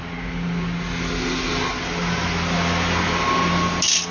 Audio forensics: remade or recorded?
recorded